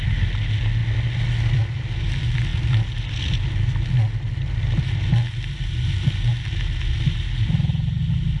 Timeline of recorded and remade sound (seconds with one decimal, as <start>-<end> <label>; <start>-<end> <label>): 0.0-8.4 recorded